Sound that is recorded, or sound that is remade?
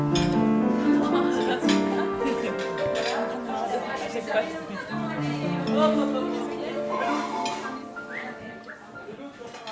recorded